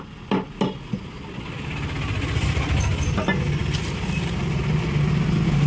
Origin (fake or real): real